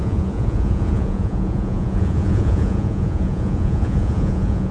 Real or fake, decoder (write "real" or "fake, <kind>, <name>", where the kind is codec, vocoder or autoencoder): fake, vocoder, Vocos